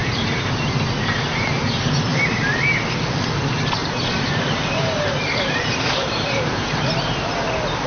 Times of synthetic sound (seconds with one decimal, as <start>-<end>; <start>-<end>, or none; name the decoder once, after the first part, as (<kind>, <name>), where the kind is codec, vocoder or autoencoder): 0.0-0.7 (vocoder, BigVGAN v2); 2.1-2.7; 3.8-6.9